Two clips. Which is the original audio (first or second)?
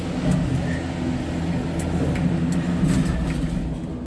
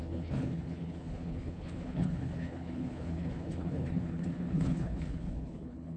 first